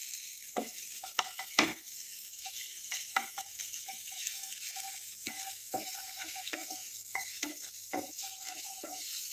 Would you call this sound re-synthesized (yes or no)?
yes